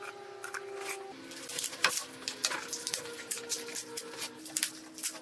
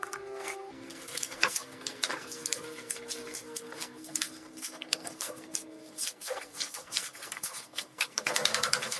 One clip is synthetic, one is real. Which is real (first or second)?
first